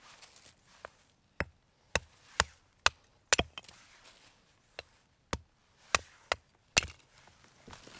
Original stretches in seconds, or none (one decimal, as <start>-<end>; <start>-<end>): 0.0-8.0